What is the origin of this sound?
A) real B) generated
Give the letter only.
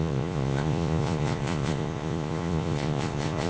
B